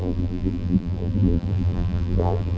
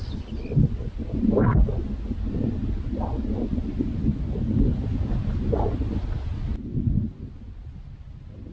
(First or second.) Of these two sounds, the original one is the second